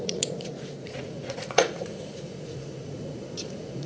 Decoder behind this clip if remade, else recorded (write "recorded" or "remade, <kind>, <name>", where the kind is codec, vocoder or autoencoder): remade, vocoder, Vocos